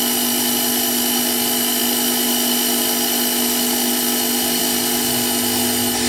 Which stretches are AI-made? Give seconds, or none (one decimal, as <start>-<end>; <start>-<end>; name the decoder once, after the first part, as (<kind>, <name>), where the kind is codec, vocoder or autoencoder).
none